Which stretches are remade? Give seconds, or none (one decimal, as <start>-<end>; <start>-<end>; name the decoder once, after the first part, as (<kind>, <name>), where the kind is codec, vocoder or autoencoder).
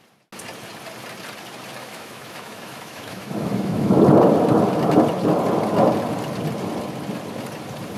1.8-4.0 (autoencoder, DAC-VAE)